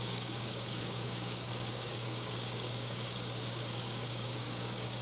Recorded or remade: remade